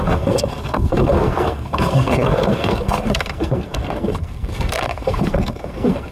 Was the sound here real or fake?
fake